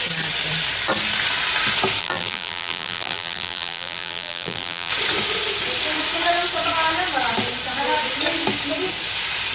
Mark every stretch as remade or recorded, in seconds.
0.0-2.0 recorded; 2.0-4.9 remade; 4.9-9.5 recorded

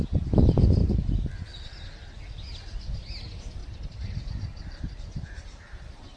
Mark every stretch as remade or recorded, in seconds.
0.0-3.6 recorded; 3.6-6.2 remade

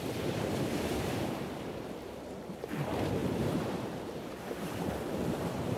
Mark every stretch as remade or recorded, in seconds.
0.0-5.8 remade

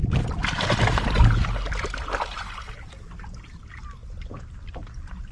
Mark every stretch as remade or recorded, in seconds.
0.0-3.2 remade; 3.2-4.0 recorded; 4.0-5.3 remade

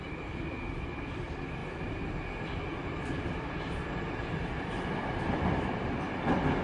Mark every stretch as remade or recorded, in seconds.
0.0-1.6 remade; 1.6-3.3 recorded; 3.3-6.6 remade